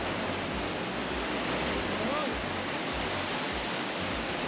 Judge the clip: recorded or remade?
recorded